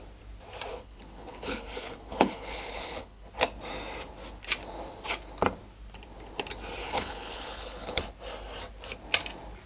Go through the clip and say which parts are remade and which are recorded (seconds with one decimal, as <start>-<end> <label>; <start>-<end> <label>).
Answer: 0.0-0.7 recorded; 0.7-3.3 remade; 3.3-6.8 recorded; 6.8-8.0 remade; 8.0-9.7 recorded